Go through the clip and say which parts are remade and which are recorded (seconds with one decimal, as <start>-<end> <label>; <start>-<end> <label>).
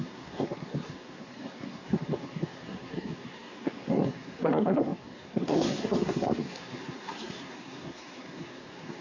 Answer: 0.0-9.0 remade